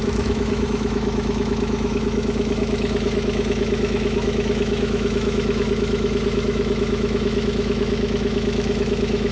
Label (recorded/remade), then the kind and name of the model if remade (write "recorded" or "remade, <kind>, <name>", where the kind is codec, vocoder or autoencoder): remade, autoencoder, DAC-VAE